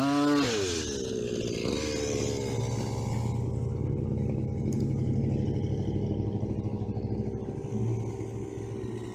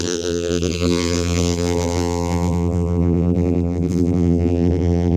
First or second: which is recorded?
first